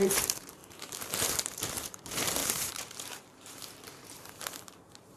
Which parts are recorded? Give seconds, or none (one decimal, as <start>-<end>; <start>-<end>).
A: none